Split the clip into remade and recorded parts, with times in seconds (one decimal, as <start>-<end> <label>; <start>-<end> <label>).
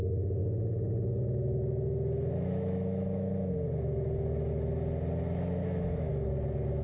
0.0-0.4 recorded; 0.4-3.5 remade; 3.5-5.6 recorded; 5.6-6.1 remade; 6.1-6.8 recorded